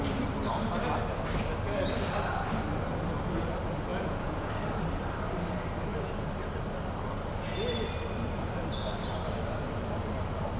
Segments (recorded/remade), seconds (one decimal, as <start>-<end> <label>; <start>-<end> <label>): 0.0-3.9 recorded; 3.9-4.5 remade; 4.5-10.6 recorded